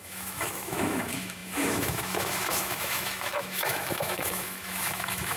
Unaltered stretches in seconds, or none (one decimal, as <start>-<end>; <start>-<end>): none